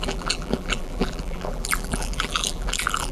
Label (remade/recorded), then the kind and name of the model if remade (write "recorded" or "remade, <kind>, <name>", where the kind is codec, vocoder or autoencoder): remade, vocoder, BigVGAN v2